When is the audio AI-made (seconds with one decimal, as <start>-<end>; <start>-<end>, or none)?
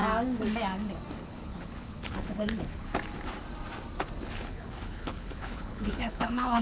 1.2-2.9; 4.3-6.6